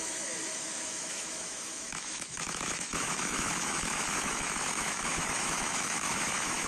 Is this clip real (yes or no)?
no